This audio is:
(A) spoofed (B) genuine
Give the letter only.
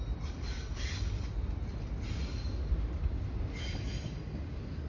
B